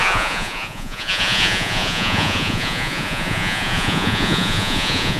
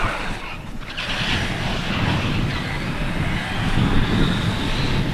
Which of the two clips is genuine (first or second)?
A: second